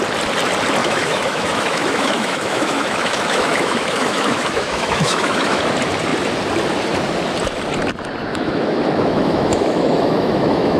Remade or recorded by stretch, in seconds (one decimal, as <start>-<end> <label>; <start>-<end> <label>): 0.0-0.8 recorded; 0.8-5.6 remade; 5.6-8.3 recorded; 8.3-10.8 remade